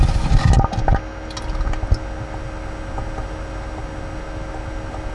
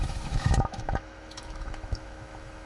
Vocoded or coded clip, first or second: second